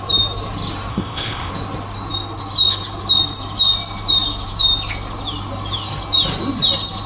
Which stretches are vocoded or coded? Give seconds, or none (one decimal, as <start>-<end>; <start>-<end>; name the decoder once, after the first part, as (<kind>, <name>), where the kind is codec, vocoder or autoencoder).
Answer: 0.9-1.5 (codec, ZipCodec)